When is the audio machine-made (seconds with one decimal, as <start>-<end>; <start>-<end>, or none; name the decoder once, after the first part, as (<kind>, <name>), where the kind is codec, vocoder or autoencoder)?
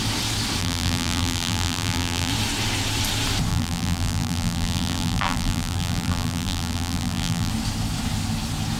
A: 0.6-2.3 (vocoder, BigVGAN v2); 3.5-7.5